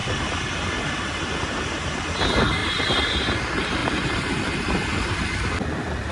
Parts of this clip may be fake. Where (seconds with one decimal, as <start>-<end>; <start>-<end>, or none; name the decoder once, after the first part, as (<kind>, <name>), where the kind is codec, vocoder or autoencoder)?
0.0-1.2 (vocoder, BigVGAN v2); 2.6-3.2; 3.8-6.1